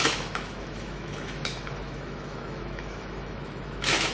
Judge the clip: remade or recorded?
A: remade